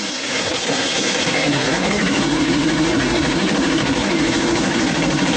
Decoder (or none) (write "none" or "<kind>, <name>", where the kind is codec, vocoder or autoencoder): codec, SNAC